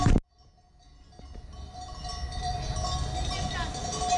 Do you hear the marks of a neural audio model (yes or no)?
no